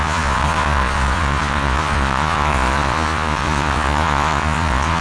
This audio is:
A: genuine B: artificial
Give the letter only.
B